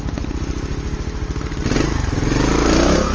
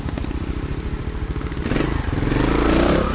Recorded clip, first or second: first